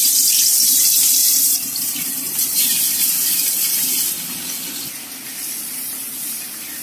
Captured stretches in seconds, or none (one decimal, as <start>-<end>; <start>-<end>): 1.2-5.3